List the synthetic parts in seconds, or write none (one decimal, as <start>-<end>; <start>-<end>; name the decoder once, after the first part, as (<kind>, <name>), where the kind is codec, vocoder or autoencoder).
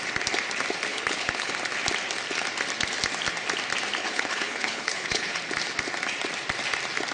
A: 0.9-1.5 (codec, HILCodec); 4.0-5.4